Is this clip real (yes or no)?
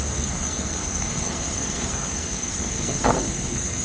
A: no